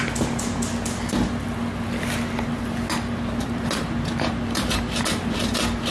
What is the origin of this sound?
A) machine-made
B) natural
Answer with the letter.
B